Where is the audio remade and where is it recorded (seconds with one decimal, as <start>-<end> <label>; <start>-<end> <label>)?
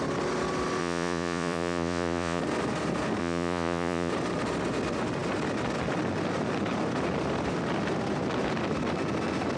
0.0-0.8 recorded; 0.8-2.4 remade; 2.4-3.2 recorded; 3.2-4.1 remade; 4.1-9.6 recorded